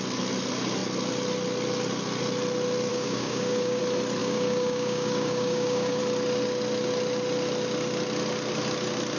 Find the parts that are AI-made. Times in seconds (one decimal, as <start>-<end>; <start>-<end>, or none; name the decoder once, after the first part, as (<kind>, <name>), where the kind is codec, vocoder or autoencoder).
2.9-3.8 (codec, DAC); 4.2-6.0